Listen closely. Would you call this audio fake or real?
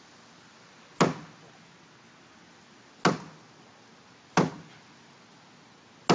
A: real